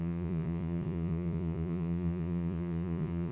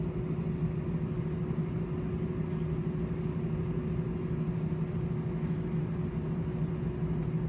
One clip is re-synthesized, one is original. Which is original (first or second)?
second